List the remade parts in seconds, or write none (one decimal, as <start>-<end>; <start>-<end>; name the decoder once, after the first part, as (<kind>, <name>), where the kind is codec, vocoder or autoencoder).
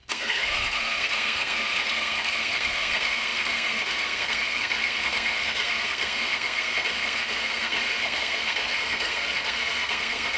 0.0-10.4 (codec, SNAC)